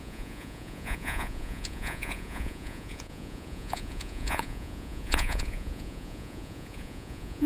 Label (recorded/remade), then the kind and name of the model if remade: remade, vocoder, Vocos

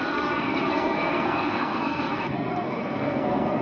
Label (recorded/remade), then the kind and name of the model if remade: remade, codec, SNAC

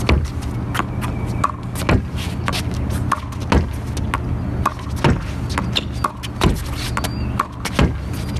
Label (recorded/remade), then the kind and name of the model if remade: recorded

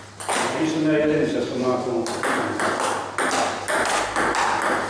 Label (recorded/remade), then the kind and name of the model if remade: recorded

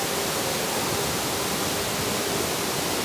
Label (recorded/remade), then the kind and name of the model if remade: recorded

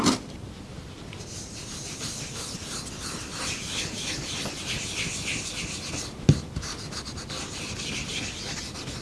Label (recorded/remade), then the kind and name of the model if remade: recorded